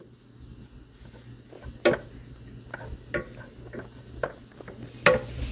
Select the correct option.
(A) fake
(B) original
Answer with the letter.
B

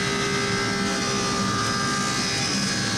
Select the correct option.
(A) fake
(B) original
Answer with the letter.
B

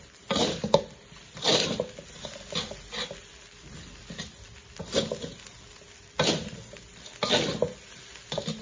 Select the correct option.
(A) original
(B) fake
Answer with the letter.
A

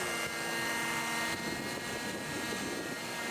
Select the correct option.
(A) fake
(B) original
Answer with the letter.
B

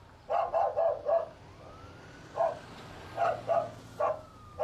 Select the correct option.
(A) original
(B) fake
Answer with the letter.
A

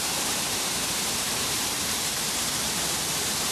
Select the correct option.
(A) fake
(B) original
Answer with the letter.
A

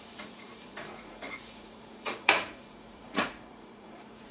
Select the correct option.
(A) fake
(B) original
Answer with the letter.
A